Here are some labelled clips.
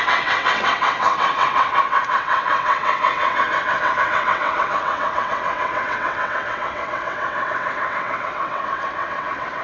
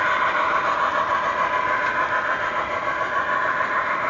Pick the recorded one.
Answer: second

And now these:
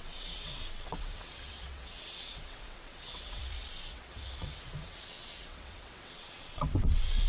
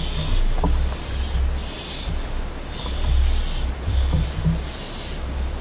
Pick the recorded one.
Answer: second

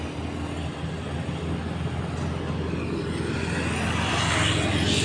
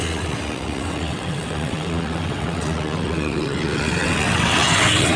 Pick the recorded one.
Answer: first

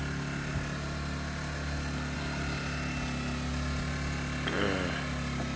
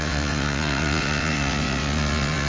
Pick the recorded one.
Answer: first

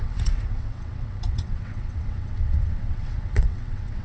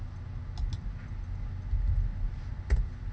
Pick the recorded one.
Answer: second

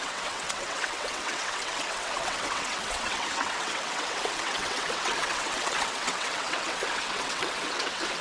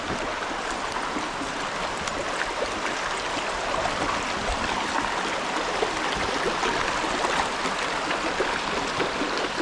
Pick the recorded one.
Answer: second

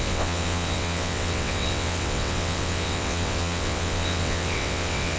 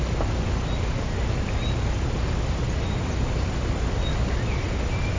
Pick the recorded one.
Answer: second